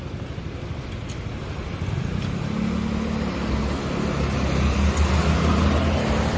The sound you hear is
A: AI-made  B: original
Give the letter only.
B